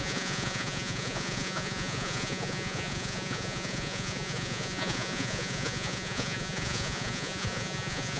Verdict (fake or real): fake